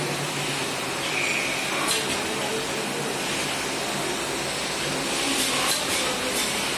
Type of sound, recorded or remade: recorded